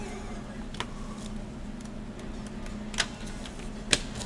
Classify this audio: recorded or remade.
recorded